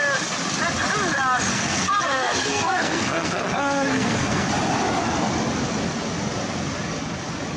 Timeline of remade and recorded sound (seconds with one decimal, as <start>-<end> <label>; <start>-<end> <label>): 0.0-1.5 recorded; 1.5-4.5 remade; 4.5-7.6 recorded